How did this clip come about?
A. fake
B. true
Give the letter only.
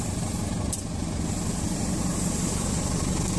B